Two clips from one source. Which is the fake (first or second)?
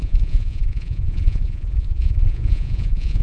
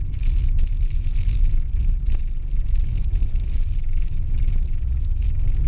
first